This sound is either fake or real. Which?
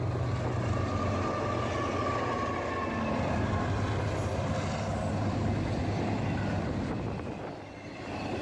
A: real